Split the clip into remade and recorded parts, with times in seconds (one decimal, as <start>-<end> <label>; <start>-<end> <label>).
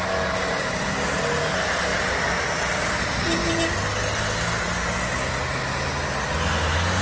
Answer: 0.0-7.0 recorded